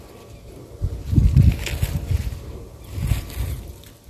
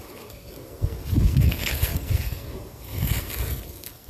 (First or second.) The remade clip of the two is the second